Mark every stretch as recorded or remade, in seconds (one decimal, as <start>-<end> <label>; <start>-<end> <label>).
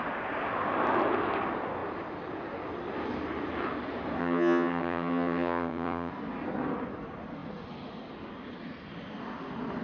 0.0-4.2 recorded; 4.2-6.1 remade; 6.1-9.8 recorded